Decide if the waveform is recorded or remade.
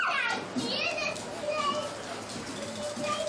recorded